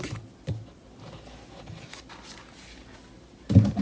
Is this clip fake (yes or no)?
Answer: no